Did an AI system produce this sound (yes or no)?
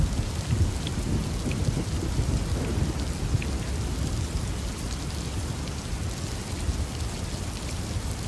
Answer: no